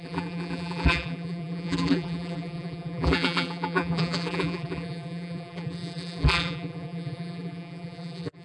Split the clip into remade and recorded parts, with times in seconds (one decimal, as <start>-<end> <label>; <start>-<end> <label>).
0.0-8.4 remade